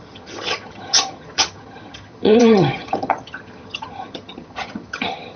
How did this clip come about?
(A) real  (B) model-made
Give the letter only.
B